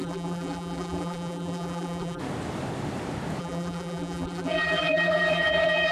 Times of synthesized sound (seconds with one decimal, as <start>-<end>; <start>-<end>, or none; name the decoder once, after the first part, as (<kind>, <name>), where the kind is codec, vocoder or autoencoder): 0.0-2.2 (vocoder, BigVGAN v2); 3.4-5.9